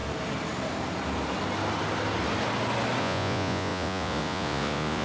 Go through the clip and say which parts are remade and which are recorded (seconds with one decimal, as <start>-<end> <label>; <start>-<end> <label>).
0.0-3.0 recorded; 3.0-5.0 remade